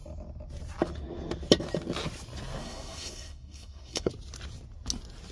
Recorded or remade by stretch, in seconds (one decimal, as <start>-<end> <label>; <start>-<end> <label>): 0.0-2.6 recorded; 2.6-4.1 remade; 4.1-5.3 recorded